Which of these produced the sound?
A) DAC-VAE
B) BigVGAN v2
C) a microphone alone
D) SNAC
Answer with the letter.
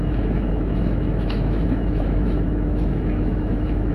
A